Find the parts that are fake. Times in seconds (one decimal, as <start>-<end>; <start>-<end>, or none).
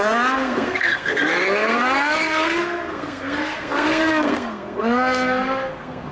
0.0-6.1